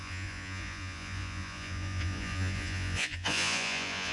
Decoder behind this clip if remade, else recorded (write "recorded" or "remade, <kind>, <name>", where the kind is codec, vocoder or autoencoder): remade, vocoder, Vocos